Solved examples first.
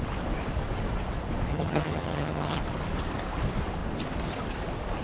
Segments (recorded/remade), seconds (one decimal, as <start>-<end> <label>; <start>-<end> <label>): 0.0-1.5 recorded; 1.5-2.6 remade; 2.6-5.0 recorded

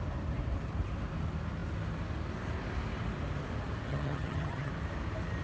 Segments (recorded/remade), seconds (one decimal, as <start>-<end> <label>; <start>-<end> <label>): 0.0-3.9 recorded; 3.9-4.7 remade; 4.7-5.4 recorded

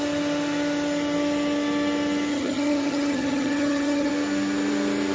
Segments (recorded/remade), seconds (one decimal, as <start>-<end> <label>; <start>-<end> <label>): 0.0-2.3 recorded; 2.3-4.1 remade; 4.1-5.1 recorded

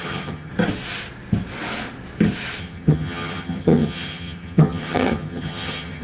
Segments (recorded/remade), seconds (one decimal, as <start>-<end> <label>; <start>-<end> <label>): 0.0-0.5 remade; 0.5-2.6 recorded; 2.6-6.0 remade

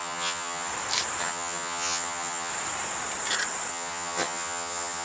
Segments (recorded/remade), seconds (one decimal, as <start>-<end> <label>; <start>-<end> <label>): 0.0-0.7 remade; 0.7-1.2 recorded; 1.2-2.5 remade; 2.5-3.7 recorded; 3.7-5.0 remade